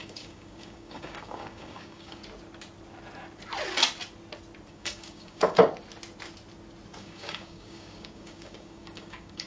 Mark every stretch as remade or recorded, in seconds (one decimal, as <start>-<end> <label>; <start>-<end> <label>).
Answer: 0.0-2.2 remade; 2.2-4.7 recorded; 4.7-5.6 remade; 5.6-7.0 recorded; 7.0-9.5 remade